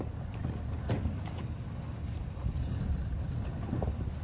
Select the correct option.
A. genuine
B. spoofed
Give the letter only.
A